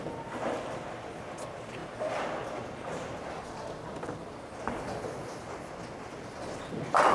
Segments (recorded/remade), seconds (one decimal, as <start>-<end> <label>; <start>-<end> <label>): 0.0-7.1 recorded